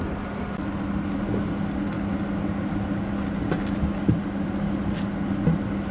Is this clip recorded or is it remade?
recorded